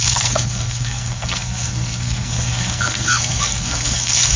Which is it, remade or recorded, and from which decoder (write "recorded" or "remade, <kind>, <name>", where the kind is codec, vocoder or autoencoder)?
remade, codec, SNAC